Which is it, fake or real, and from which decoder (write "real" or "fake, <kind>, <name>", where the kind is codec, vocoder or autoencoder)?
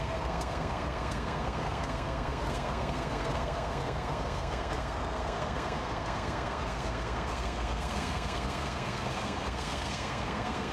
fake, codec, SNAC